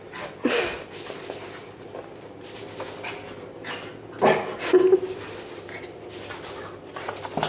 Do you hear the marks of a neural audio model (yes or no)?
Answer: no